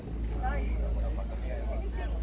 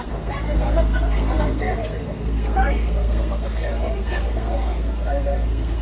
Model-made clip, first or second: second